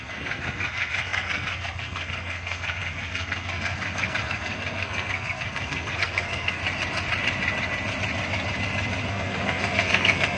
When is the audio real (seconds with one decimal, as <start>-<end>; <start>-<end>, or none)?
6.6-9.1